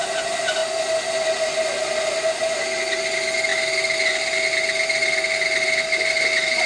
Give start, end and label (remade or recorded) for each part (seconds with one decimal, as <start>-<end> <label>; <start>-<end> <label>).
0.0-6.7 recorded